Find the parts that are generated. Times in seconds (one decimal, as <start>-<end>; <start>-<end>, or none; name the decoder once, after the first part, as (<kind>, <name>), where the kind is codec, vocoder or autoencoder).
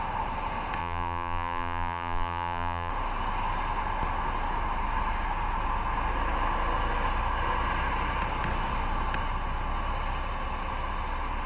0.8-2.9 (vocoder, BigVGAN v2)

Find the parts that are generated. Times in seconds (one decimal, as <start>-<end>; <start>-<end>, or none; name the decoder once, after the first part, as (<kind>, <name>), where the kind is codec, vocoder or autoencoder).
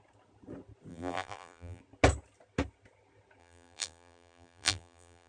0.9-1.8 (vocoder, BigVGAN v2); 3.4-5.3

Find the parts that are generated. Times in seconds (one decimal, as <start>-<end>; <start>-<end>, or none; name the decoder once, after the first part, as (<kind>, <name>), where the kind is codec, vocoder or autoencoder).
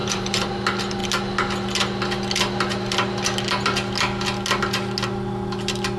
0.0-0.5 (vocoder, BigVGAN v2)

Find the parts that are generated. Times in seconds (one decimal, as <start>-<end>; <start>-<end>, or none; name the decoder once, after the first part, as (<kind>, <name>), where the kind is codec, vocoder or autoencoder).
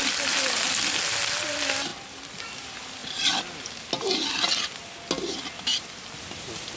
3.0-3.7 (vocoder, BigVGAN v2); 5.7-6.8